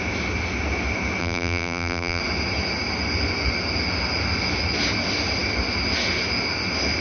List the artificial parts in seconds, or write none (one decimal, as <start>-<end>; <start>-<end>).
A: 1.2-2.2